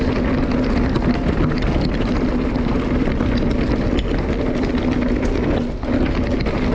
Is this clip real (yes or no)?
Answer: yes